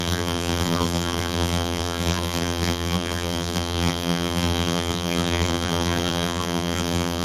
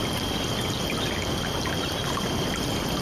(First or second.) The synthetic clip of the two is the first